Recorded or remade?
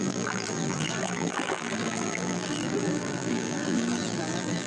remade